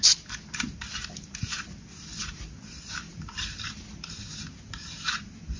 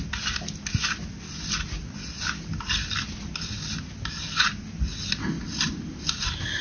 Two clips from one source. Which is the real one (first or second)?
second